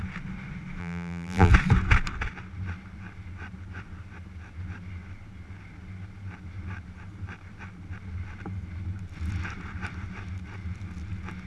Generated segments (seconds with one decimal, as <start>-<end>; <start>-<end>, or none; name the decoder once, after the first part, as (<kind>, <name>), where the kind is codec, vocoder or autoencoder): 0.8-1.5 (vocoder, BigVGAN v2)